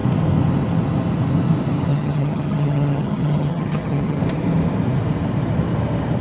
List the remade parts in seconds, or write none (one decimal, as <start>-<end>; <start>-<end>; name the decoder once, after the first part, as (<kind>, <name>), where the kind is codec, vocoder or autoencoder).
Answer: 1.9-4.2 (vocoder, HiFi-GAN)